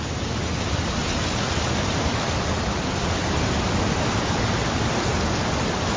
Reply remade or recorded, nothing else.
recorded